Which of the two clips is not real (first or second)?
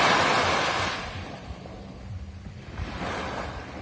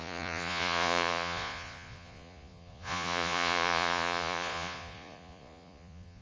second